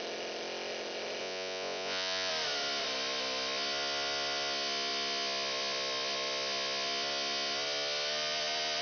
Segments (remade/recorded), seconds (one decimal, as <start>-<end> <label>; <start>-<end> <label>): 0.0-1.2 recorded; 1.2-2.3 remade; 2.3-8.8 recorded